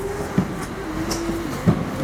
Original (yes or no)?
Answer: yes